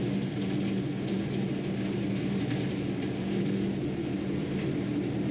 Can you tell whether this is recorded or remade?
recorded